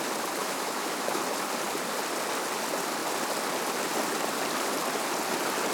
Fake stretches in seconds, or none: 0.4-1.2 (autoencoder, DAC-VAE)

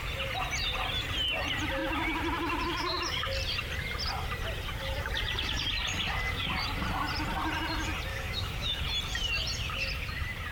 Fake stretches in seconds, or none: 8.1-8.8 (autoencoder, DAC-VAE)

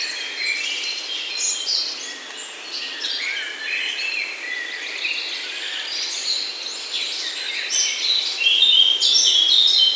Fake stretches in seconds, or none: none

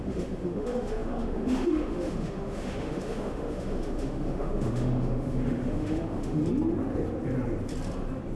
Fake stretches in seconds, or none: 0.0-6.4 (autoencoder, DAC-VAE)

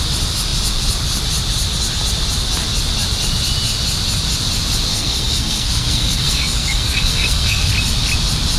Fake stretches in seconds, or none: 4.9-7.7 (codec, SNAC)